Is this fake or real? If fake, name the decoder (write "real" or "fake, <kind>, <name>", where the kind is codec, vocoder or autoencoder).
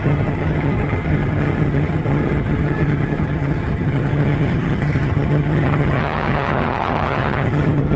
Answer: fake, vocoder, HiFi-GAN